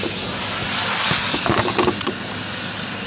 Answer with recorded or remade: recorded